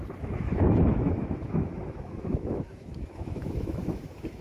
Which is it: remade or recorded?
remade